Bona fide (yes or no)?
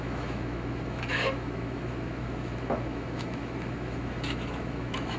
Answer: no